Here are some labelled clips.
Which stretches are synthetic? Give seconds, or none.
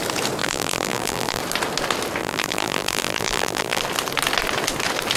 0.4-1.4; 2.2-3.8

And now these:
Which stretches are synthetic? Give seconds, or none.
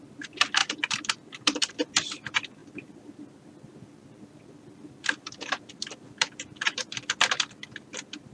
0.0-8.3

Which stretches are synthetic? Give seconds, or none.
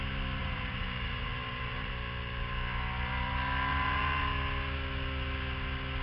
0.4-1.9; 3.7-4.2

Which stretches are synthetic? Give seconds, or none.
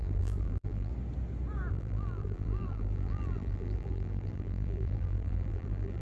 0.0-0.9; 1.7-6.0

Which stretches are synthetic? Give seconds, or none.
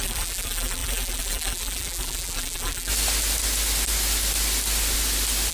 0.0-2.9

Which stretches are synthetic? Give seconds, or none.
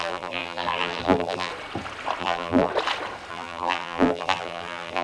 0.0-1.5; 2.2-2.7; 3.3-5.0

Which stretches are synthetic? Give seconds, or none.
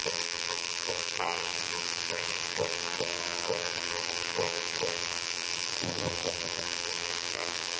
0.0-7.8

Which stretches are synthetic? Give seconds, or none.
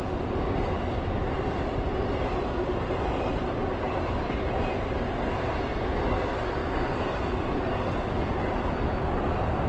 none